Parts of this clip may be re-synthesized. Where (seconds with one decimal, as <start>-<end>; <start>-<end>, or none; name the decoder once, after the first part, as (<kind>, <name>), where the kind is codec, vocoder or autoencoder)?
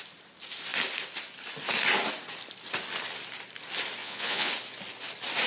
4.0-4.5 (vocoder, Vocos)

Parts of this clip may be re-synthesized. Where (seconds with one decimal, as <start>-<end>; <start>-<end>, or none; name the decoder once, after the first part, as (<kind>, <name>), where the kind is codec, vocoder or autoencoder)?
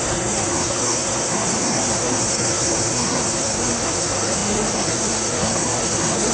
0.0-6.3 (codec, SNAC)